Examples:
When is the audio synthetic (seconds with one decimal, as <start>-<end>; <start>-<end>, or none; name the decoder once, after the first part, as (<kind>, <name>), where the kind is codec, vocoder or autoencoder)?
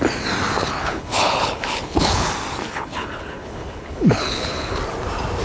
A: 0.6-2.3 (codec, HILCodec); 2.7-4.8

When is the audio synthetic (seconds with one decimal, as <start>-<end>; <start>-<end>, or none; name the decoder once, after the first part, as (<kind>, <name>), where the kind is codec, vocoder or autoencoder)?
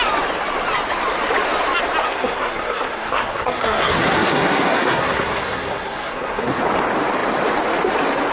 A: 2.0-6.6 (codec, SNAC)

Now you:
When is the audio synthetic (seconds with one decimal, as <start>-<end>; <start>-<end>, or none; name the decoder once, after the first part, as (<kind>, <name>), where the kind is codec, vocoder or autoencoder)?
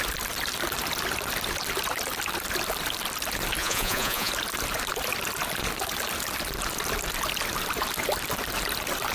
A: 3.6-4.3 (vocoder, Vocos)